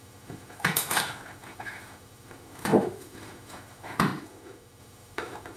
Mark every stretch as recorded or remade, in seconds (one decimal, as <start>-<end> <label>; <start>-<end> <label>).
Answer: 0.0-5.6 remade